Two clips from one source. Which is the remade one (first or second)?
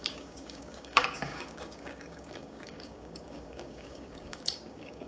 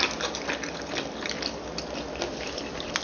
first